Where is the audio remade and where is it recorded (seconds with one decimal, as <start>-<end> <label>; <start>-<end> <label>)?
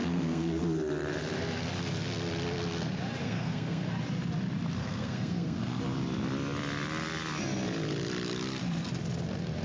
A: 0.0-0.6 remade; 0.6-3.2 recorded; 3.2-3.9 remade; 3.9-4.8 recorded; 4.8-5.8 remade; 5.8-9.6 recorded